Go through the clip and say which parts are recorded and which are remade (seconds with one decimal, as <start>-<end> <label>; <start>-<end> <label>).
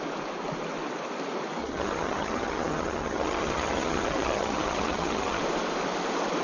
0.0-1.6 recorded; 1.6-5.4 remade; 5.4-6.4 recorded